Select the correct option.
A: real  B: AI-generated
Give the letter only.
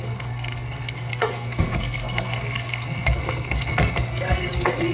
B